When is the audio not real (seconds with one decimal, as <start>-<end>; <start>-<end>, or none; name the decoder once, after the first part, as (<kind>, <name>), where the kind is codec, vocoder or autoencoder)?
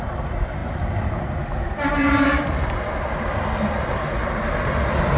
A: none